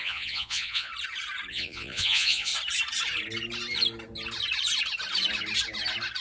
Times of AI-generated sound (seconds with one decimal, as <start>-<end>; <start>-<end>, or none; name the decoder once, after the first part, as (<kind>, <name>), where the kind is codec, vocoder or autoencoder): 0.0-0.9 (vocoder, Vocos); 1.5-2.5